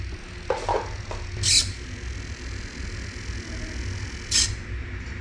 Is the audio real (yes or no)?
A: yes